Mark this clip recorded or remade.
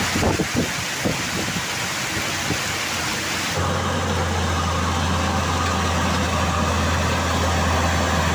recorded